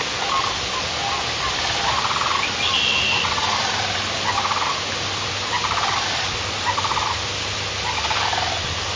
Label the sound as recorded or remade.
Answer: recorded